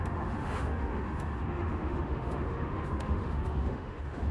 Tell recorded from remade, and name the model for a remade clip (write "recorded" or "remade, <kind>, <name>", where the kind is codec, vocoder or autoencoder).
remade, autoencoder, DAC-VAE